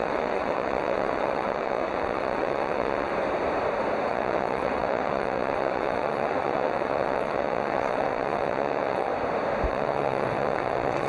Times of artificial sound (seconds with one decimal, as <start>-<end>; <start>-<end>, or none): 0.0-3.1; 4.1-9.1; 9.7-11.1